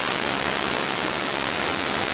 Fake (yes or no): yes